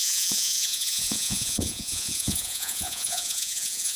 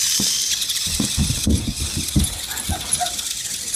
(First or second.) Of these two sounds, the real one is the second